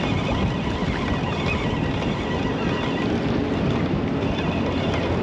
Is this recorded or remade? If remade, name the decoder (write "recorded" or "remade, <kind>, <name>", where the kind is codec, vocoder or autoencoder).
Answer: recorded